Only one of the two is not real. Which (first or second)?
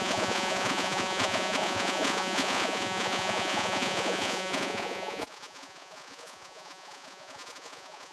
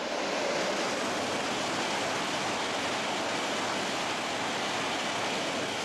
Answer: first